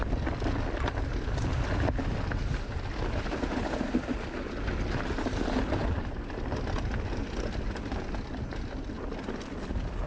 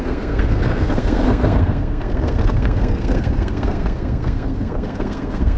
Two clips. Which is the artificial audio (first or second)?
second